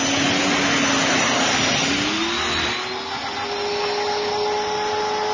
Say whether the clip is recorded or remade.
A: recorded